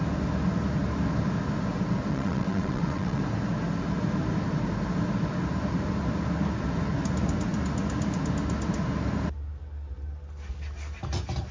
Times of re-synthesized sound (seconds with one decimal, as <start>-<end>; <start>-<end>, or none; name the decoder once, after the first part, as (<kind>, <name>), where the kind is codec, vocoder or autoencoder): 2.1-3.2 (vocoder, WaveNeXt)